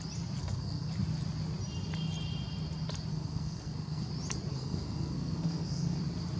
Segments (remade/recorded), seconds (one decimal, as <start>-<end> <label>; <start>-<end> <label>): 0.0-0.4 recorded; 0.4-0.9 remade; 0.9-3.1 recorded; 3.1-4.1 remade; 4.1-4.5 recorded; 4.5-6.0 remade; 6.0-6.4 recorded